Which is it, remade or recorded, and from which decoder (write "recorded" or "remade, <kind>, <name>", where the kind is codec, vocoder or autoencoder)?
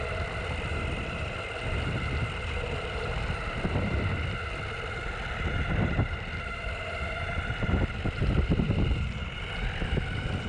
recorded